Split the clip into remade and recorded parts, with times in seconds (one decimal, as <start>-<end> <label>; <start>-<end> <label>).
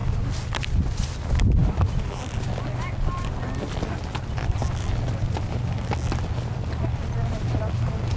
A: 0.0-8.2 recorded